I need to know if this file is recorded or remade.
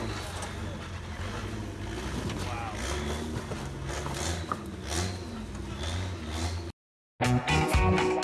recorded